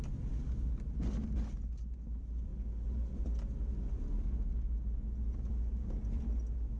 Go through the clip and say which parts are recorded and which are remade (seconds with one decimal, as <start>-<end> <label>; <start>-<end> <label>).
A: 0.0-6.8 recorded